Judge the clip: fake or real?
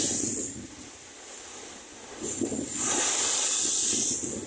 real